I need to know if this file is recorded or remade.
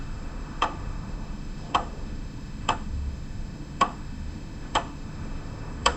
remade